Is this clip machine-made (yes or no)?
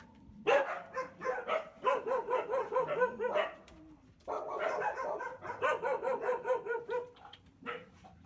yes